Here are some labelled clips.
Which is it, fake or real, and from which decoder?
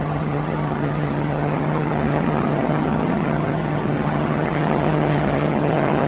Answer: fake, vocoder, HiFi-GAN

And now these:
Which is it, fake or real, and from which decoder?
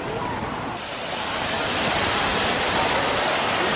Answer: real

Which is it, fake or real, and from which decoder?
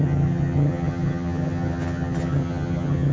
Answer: fake, vocoder, HiFi-GAN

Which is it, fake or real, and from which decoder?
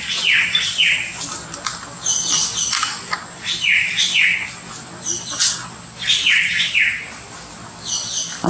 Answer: real